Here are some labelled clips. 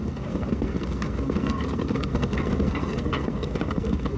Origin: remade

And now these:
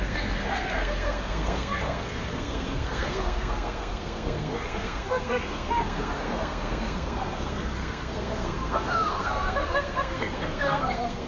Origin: remade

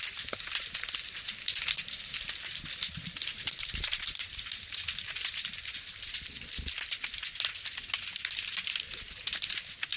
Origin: recorded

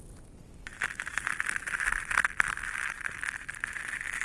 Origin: recorded